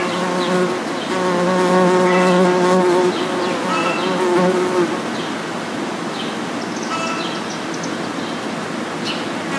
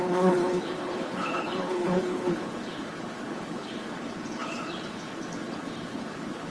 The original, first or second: first